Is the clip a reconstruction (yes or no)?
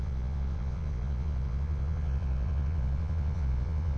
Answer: yes